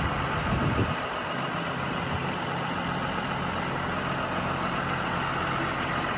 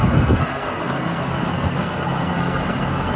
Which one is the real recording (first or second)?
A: first